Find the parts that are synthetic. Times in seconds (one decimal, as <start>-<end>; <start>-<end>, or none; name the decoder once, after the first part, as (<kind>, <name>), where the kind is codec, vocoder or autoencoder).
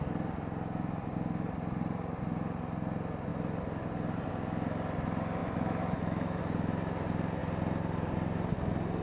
5.4-6.4 (autoencoder, DAC-VAE)